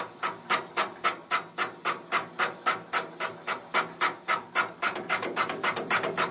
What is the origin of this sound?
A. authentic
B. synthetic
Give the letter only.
A